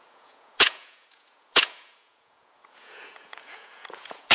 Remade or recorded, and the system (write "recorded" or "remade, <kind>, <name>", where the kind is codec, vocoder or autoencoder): remade, vocoder, Vocos